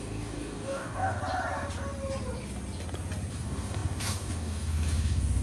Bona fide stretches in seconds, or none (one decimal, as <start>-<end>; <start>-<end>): 1.2-3.3